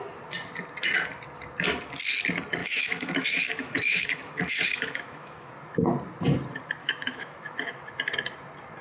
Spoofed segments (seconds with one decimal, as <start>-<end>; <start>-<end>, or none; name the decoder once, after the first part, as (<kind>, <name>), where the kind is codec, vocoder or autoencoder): 2.6-5.5 (autoencoder, DAC-VAE); 6.8-7.9